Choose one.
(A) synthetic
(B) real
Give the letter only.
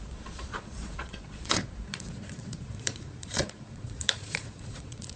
A